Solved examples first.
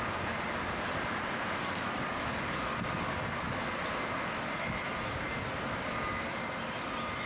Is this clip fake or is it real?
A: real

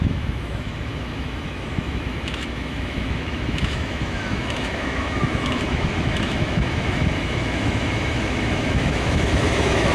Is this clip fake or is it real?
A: fake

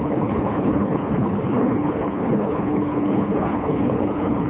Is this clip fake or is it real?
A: fake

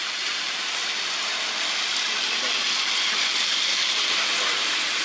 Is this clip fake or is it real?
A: real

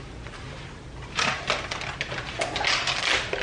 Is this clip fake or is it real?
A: real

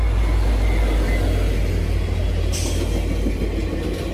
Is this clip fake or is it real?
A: real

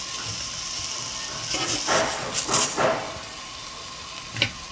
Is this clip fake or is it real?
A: real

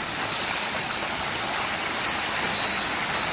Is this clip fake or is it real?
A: real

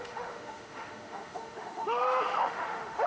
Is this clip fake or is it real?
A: fake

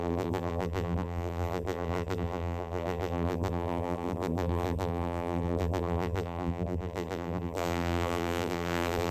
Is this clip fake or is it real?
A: fake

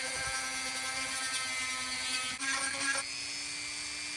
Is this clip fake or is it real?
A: real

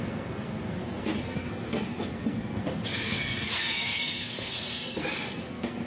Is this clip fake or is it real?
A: fake